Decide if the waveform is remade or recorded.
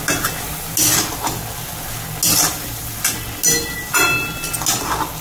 recorded